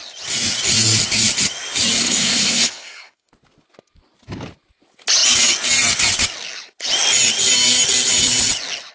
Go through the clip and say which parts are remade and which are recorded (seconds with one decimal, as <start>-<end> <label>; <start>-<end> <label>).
0.0-2.0 recorded; 2.0-3.3 remade; 3.3-8.9 recorded